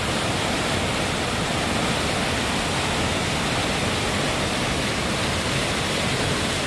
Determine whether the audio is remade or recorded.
recorded